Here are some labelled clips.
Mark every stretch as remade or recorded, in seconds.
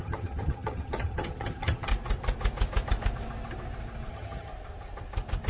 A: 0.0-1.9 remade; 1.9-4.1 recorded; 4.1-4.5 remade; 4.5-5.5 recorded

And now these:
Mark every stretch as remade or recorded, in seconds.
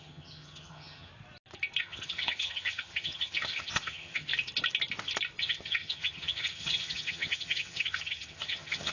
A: 0.0-1.1 remade; 1.1-1.8 recorded; 1.8-4.3 remade; 4.3-5.4 recorded; 5.4-8.9 remade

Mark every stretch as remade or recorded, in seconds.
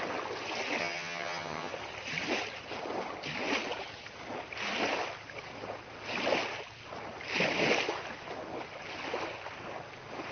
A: 0.0-0.8 recorded; 0.8-1.7 remade; 1.7-10.3 recorded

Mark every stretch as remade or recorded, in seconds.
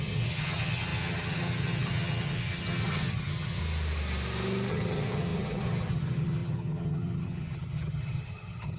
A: 0.0-3.6 remade; 3.6-4.7 recorded; 4.7-8.8 remade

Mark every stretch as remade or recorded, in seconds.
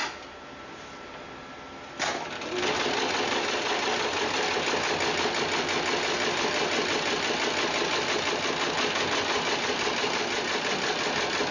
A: 0.0-11.5 recorded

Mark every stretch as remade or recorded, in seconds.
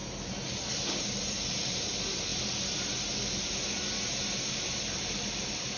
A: 0.0-5.8 recorded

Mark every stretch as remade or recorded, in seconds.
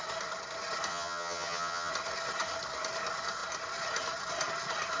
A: 0.0-0.9 recorded; 0.9-1.9 remade; 1.9-5.0 recorded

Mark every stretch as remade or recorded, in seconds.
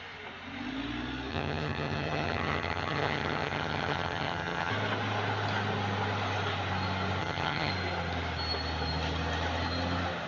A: 0.0-1.3 recorded; 1.3-4.7 remade; 4.7-7.2 recorded; 7.2-7.7 remade; 7.7-10.3 recorded